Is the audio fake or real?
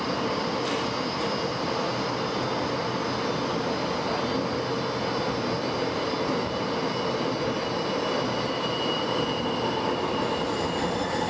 real